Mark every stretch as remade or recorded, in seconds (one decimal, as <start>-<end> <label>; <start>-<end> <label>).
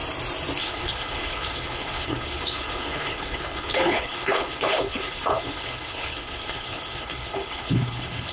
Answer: 0.0-0.6 recorded; 0.6-8.3 remade